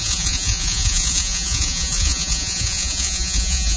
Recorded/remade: remade